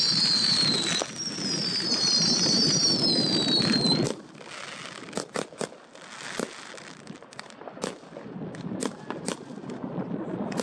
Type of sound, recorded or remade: recorded